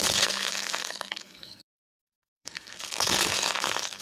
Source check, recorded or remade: remade